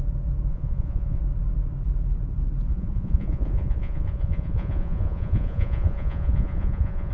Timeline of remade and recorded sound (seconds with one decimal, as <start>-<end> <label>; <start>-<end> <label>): 0.0-0.5 recorded; 0.5-1.2 remade; 1.2-2.7 recorded; 2.7-7.1 remade